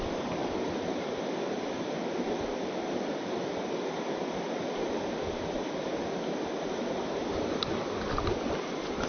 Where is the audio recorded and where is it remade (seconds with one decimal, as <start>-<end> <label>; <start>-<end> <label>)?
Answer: 0.0-9.1 recorded